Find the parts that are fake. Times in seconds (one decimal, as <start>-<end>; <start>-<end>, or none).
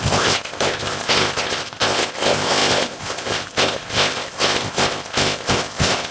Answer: 0.0-6.1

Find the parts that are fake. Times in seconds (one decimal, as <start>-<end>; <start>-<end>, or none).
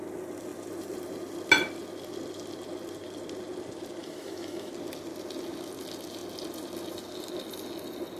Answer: 4.0-4.7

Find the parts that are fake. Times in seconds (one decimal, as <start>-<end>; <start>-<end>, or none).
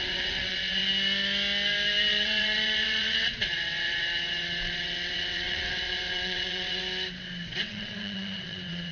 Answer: 0.0-0.8; 2.1-6.8; 7.6-8.9